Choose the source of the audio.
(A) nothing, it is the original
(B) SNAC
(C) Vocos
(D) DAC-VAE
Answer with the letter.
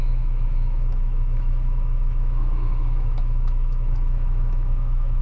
D